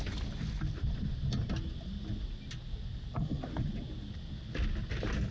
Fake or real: real